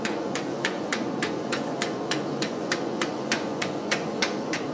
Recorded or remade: remade